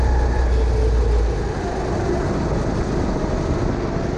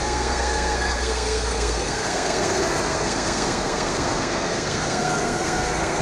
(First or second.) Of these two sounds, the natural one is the first